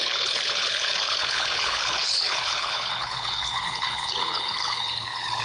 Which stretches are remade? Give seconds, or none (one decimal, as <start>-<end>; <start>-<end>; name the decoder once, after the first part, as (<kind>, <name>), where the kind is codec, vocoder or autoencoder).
0.0-5.4 (codec, HILCodec)